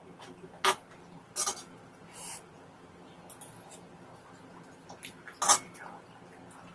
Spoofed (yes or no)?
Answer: no